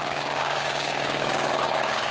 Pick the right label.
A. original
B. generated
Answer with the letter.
B